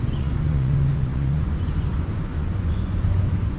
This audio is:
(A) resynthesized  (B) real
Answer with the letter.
A